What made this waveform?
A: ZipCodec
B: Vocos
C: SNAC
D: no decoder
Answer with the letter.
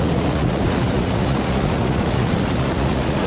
B